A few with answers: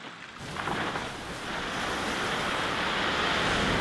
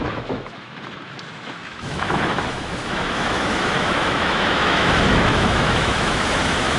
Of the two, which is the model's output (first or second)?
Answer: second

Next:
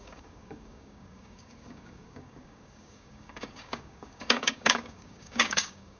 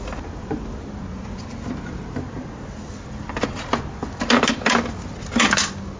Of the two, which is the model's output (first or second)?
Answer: first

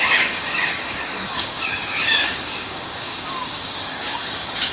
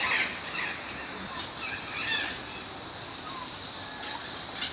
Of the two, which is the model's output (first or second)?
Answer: first